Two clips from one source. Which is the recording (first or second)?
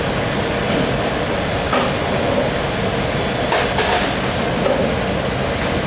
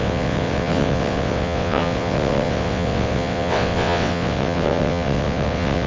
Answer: first